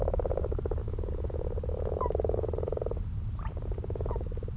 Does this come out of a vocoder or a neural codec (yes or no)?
no